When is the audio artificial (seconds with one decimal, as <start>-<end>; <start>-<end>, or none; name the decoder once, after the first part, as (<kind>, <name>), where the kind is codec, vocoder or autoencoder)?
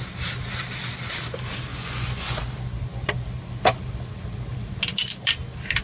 1.7-2.4 (vocoder, Vocos)